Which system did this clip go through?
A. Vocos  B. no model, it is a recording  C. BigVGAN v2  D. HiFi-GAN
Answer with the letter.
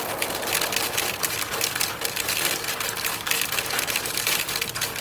C